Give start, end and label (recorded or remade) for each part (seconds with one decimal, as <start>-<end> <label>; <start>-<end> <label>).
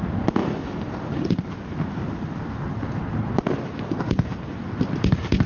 0.0-5.5 recorded